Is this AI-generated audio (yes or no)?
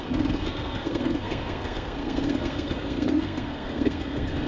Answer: yes